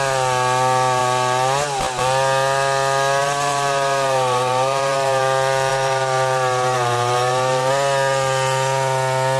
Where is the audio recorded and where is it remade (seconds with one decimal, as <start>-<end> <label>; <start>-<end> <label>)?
0.0-3.2 recorded; 3.2-5.2 remade; 5.2-5.7 recorded; 5.7-7.7 remade; 7.7-9.4 recorded